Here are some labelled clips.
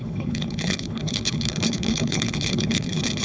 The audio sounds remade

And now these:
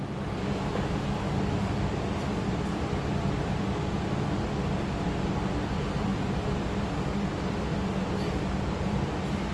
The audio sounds recorded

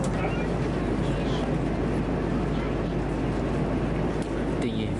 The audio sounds recorded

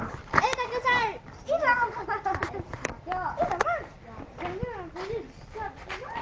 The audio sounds recorded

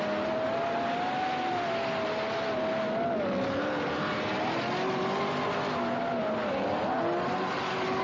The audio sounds recorded